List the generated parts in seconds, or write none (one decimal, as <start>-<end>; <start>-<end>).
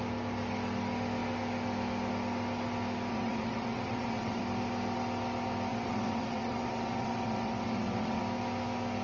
3.1-4.4; 5.7-8.2